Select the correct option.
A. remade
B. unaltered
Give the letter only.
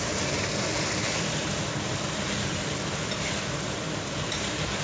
A